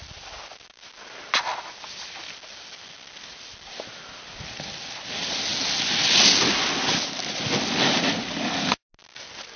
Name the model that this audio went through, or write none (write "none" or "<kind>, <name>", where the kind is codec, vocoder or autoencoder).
none